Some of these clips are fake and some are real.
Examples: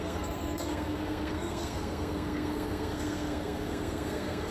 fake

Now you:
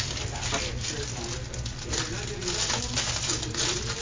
real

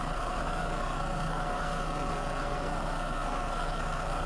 fake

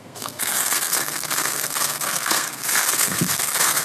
fake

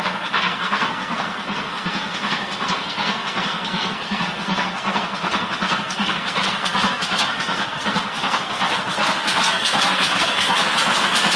fake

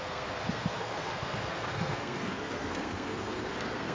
fake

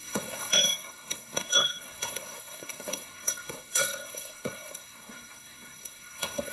fake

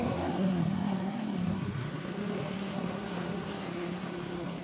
fake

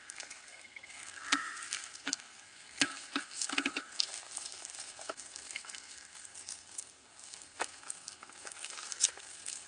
fake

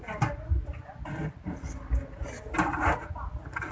real